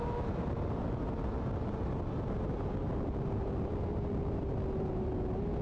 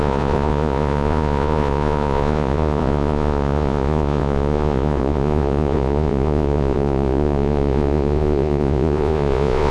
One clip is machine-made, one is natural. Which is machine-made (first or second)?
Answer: second